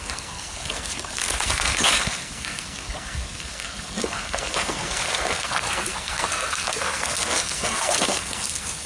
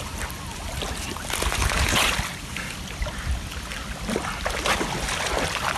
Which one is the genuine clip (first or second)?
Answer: second